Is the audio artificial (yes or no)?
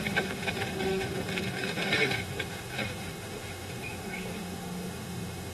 yes